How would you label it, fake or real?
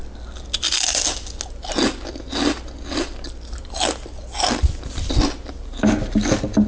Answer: real